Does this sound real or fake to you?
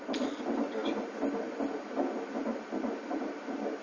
real